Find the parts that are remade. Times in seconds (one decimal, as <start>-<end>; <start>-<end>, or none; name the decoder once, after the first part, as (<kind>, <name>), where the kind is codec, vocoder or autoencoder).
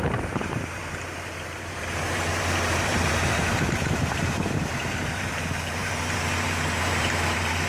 0.0-7.7 (vocoder, BigVGAN v2)